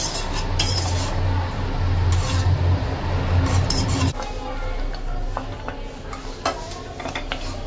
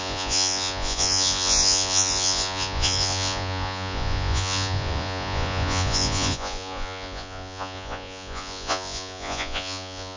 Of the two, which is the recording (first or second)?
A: first